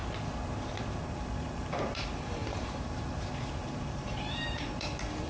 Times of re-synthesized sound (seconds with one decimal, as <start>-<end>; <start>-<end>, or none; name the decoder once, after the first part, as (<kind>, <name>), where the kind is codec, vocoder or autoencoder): 1.0-5.3 (vocoder, BigVGAN v2)